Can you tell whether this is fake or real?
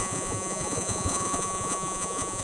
fake